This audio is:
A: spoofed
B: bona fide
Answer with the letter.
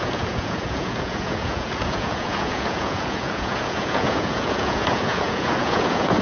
A